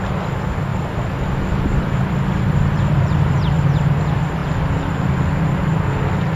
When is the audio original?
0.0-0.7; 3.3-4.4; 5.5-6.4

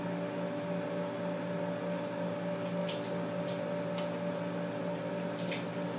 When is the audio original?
0.0-6.0

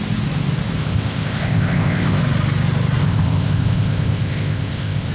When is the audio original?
0.0-0.8; 2.2-3.0

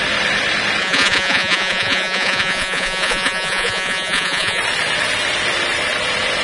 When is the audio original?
0.0-0.8; 4.6-6.4